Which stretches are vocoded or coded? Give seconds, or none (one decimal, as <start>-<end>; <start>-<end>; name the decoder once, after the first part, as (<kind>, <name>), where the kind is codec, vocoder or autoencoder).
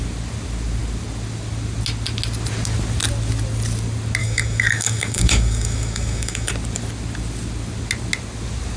4.2-6.5 (codec, DAC)